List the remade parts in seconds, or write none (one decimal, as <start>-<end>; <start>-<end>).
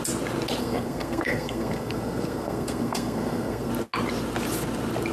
0.6-3.7